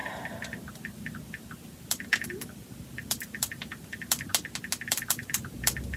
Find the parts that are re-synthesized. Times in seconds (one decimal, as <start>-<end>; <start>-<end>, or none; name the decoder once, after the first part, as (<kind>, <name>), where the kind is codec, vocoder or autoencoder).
0.0-4.3 (vocoder, BigVGAN v2); 4.9-6.0